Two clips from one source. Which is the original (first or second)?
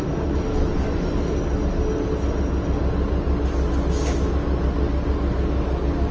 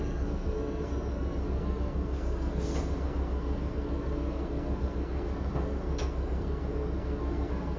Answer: first